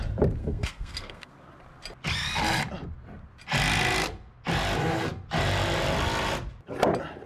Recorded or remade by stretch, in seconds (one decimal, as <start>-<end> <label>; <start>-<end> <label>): 0.0-0.4 recorded; 0.4-1.3 remade; 1.3-7.3 recorded